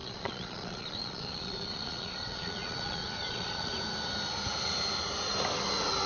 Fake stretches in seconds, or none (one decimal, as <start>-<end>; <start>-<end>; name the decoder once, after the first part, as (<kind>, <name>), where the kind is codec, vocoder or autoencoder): 0.0-3.7 (vocoder, Vocos)